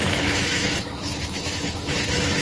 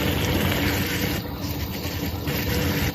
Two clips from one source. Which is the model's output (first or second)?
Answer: first